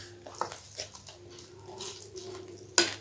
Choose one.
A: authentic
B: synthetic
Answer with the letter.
A